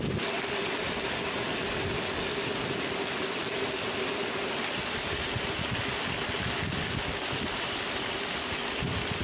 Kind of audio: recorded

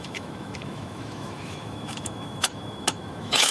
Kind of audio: remade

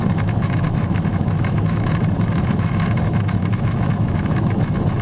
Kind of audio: remade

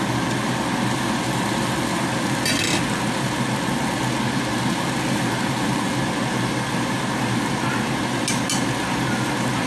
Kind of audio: recorded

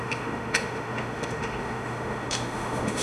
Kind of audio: remade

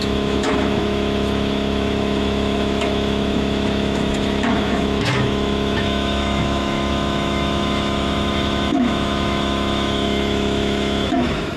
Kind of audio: remade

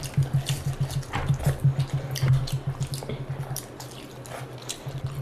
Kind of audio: recorded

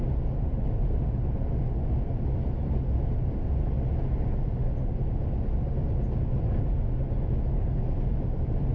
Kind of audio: recorded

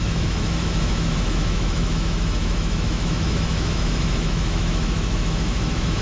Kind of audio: remade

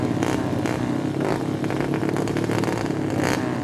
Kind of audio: recorded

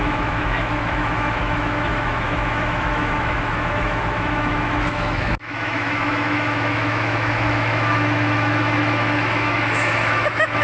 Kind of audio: remade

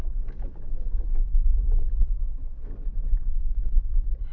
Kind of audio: recorded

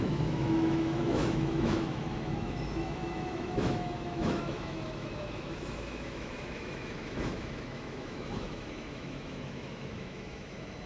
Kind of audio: remade